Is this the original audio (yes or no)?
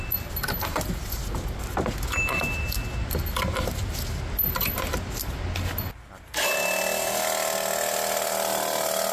yes